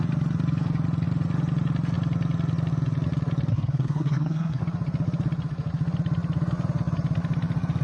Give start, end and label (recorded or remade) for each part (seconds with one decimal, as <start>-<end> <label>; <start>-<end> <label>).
0.0-3.5 recorded; 3.5-4.6 remade; 4.6-7.8 recorded